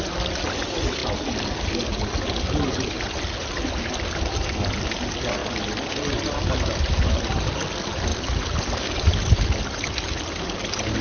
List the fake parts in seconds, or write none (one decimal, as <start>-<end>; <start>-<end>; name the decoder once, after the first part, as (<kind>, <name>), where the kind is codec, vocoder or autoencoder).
8.1-8.8 (vocoder, BigVGAN v2)